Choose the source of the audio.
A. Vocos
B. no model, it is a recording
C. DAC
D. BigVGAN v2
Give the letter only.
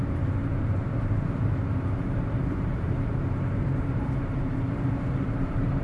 D